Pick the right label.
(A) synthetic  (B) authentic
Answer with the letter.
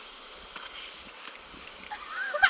A